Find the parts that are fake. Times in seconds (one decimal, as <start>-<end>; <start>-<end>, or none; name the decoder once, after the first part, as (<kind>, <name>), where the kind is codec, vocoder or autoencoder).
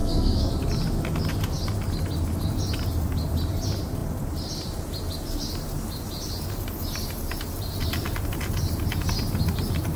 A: 0.0-0.5 (codec, SNAC)